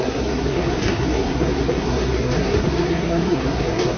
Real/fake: fake